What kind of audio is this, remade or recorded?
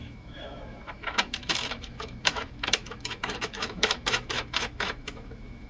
remade